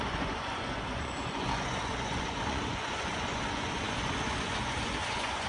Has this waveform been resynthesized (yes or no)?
yes